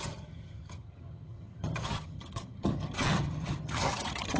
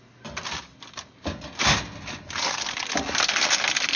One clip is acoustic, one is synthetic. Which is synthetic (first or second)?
first